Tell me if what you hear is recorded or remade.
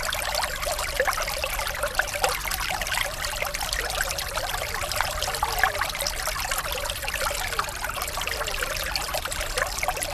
recorded